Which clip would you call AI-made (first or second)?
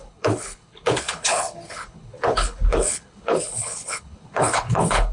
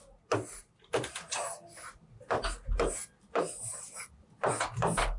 first